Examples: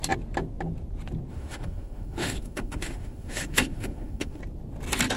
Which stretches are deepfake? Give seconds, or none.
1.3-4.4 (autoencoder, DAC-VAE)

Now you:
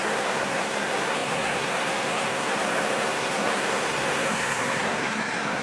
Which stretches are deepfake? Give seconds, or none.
0.0-5.6 (codec, SNAC)

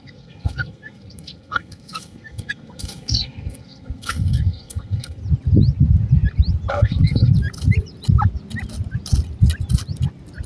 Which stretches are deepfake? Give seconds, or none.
0.0-5.2 (codec, SNAC); 6.7-7.3

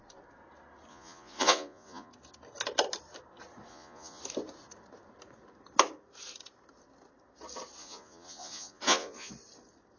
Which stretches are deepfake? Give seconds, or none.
0.9-2.1 (vocoder, Vocos); 3.7-4.2; 7.8-9.3

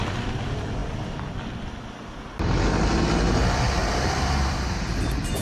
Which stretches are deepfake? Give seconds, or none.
3.8-4.6 (vocoder, BigVGAN v2)